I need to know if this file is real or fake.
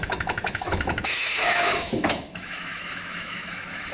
fake